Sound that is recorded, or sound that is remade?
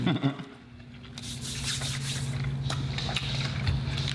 recorded